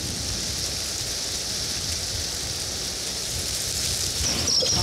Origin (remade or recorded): recorded